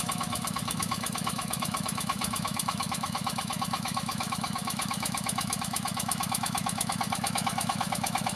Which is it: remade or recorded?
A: remade